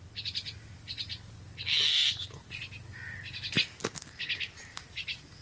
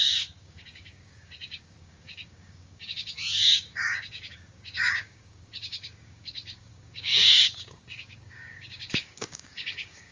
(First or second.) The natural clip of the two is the first